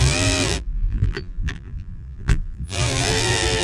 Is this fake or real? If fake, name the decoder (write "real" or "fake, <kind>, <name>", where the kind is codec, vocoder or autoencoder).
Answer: fake, vocoder, BigVGAN v2